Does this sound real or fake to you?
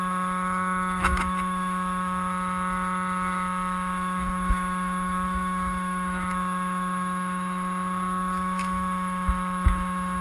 fake